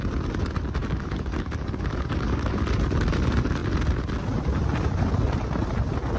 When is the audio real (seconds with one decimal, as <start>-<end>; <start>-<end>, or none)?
0.0-0.8; 2.6-6.2

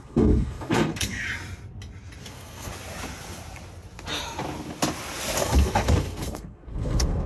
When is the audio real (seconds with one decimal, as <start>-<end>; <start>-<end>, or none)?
1.2-2.2; 2.7-5.4